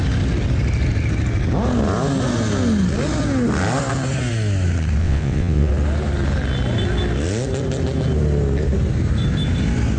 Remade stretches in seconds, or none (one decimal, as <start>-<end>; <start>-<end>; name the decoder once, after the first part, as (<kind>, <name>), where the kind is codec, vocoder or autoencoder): 5.0-5.7 (vocoder, WaveNeXt)

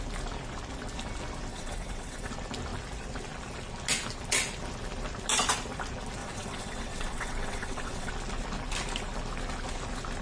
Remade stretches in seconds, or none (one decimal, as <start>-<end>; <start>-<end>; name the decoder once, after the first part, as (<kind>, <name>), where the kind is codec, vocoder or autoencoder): 1.5-2.3 (vocoder, WaveNeXt); 6.2-8.1

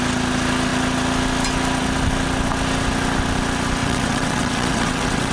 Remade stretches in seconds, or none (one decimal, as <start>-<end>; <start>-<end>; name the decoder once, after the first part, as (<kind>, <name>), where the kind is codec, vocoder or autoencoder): 3.8-5.3 (vocoder, WaveNeXt)

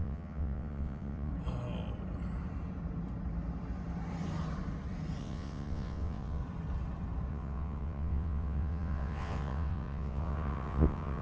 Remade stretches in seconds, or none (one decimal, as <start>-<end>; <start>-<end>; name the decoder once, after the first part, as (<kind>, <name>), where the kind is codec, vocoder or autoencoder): 0.0-1.3 (vocoder, WaveNeXt); 5.2-6.4; 7.3-11.2